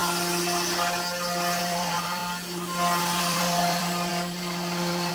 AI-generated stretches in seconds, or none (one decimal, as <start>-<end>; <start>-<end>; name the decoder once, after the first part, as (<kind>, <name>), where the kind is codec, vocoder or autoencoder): 1.6-2.2 (vocoder, BigVGAN v2); 3.0-5.1